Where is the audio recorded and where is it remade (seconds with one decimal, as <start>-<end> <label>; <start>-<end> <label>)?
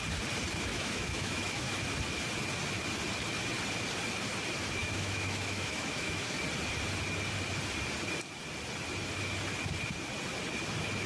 0.0-0.7 recorded; 0.7-1.8 remade; 1.8-4.8 recorded; 4.8-6.4 remade; 6.4-11.1 recorded